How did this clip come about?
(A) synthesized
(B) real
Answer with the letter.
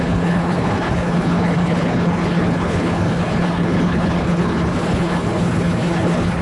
A